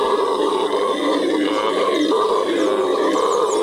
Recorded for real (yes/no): yes